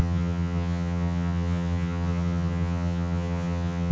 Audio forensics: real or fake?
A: fake